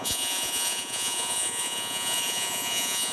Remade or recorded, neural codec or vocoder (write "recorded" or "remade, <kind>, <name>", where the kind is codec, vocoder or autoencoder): remade, vocoder, Vocos